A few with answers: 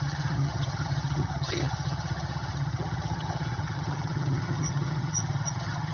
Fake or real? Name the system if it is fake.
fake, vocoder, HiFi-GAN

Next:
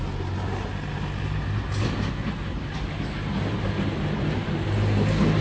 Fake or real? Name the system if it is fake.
real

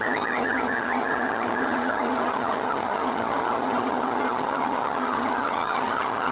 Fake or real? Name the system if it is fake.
fake, vocoder, HiFi-GAN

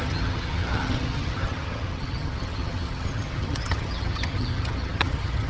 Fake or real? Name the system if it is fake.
fake, vocoder, HiFi-GAN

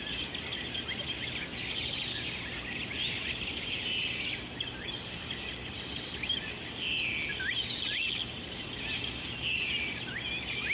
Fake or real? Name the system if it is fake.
real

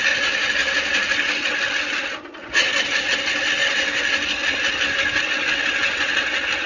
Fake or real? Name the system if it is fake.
real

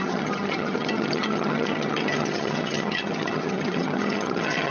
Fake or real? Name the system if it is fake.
fake, vocoder, HiFi-GAN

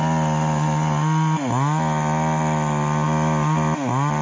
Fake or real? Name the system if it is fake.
real